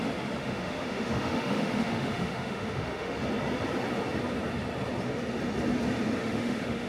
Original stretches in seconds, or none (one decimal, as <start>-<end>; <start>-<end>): 0.0-0.4; 3.2-6.2